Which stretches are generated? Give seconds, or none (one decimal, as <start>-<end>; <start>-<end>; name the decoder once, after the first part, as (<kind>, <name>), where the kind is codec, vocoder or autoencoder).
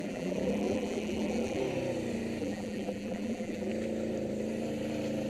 0.0-1.6 (vocoder, BigVGAN v2); 2.4-3.7